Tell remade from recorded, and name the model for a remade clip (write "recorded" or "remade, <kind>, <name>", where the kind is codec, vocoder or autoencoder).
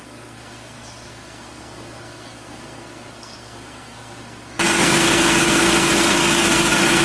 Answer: remade, codec, SNAC